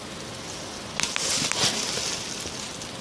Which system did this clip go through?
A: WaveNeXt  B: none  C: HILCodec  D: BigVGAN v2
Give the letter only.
B